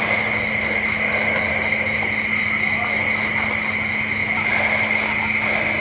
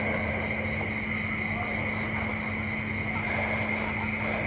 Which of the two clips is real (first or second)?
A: second